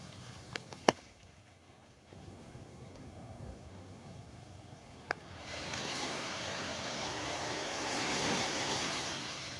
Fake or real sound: fake